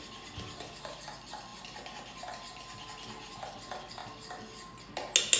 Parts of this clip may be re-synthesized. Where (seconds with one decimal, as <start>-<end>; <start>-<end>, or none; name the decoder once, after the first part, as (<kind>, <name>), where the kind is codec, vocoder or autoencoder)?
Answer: none